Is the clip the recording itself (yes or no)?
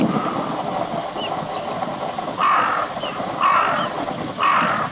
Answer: yes